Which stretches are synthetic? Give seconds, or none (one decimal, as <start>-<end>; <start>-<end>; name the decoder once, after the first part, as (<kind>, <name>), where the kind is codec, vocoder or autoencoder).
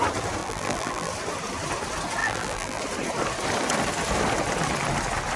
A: 0.4-1.1 (vocoder, BigVGAN v2); 2.2-2.8